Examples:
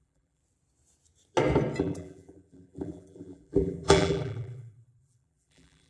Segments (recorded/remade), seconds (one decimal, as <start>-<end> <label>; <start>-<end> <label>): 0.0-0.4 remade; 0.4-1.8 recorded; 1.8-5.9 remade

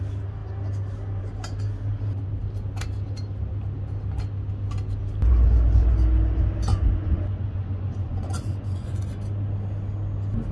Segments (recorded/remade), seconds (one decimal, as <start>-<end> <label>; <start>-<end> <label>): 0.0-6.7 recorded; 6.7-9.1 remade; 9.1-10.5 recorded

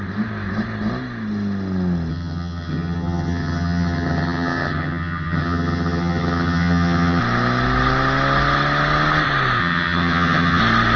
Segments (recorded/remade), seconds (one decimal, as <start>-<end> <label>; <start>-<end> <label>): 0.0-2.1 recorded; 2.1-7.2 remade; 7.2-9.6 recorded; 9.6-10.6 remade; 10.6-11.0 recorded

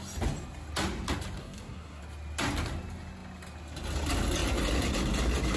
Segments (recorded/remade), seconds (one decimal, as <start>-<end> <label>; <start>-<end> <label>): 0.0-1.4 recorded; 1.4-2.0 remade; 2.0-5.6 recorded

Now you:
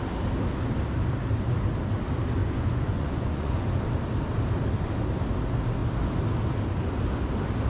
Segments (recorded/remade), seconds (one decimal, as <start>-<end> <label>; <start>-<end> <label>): 0.0-2.4 recorded; 2.4-3.7 remade; 3.7-7.7 recorded

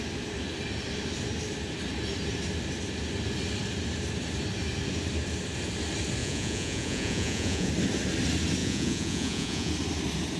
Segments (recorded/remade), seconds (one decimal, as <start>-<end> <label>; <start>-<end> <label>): 0.0-6.2 recorded; 6.2-7.7 remade; 7.7-8.6 recorded; 8.6-9.7 remade; 9.7-10.4 recorded

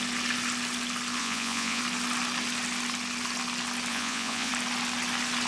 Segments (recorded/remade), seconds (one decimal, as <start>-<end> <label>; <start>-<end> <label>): 0.0-1.2 recorded; 1.2-1.8 remade; 1.8-3.9 recorded; 3.9-4.5 remade; 4.5-5.5 recorded

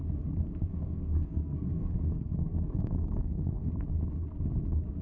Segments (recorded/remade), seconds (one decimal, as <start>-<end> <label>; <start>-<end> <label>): 0.0-0.7 recorded; 0.7-3.7 remade; 3.7-5.0 recorded